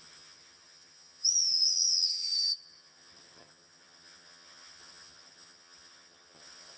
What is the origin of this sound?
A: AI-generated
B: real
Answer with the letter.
A